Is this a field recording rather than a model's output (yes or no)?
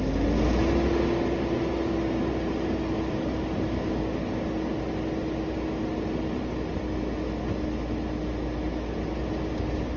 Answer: yes